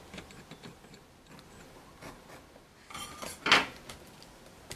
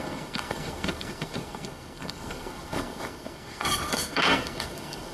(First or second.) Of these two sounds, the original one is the first